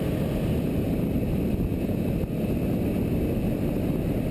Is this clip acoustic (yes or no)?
yes